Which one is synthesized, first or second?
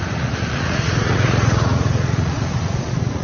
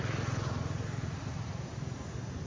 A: first